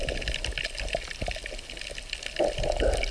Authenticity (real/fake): real